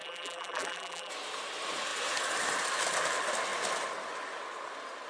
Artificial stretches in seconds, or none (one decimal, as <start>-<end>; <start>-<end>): 0.0-1.1